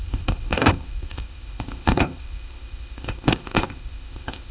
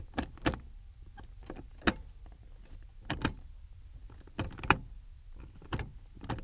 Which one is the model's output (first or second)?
first